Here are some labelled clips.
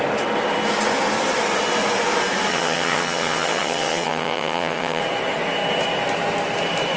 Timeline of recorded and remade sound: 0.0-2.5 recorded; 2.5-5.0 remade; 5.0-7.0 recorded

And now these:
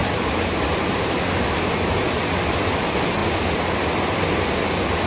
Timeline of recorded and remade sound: 0.0-1.0 remade; 1.0-5.1 recorded

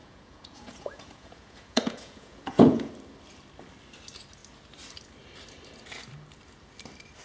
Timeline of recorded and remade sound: 0.0-2.9 remade; 2.9-7.2 recorded

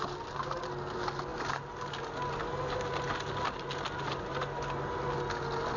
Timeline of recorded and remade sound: 0.0-5.8 recorded

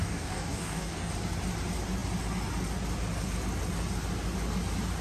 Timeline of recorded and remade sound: 0.0-1.1 remade; 1.1-5.0 recorded

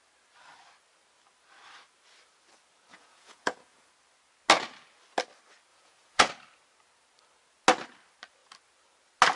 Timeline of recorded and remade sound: 0.0-2.9 recorded; 2.9-3.9 remade; 3.9-5.7 recorded; 5.7-6.3 remade; 6.3-9.4 recorded

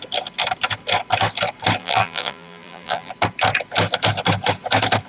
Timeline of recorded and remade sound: 0.0-1.8 recorded; 1.8-3.1 remade; 3.1-5.1 recorded